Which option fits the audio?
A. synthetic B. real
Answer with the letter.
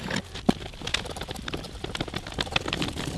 B